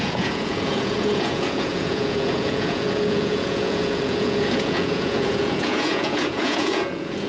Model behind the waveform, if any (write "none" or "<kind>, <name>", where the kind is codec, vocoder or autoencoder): vocoder, Vocos